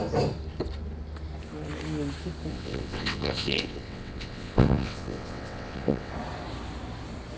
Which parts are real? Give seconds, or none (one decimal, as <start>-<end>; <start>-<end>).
0.0-2.5; 6.1-7.4